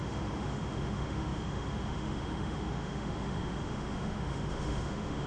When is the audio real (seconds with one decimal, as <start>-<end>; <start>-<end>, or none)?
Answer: none